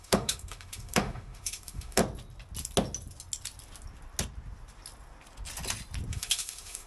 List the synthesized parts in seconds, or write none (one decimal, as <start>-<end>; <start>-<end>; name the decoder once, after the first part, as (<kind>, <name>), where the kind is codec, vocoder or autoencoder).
0.0-2.0 (autoencoder, DAC-VAE); 6.1-6.9